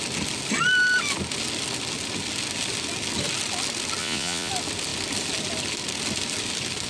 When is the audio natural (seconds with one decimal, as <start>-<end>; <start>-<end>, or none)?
0.0-4.0; 4.5-6.9